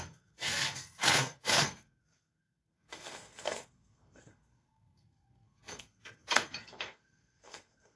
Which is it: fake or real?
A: fake